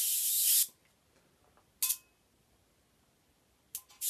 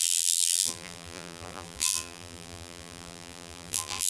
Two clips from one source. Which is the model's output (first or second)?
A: second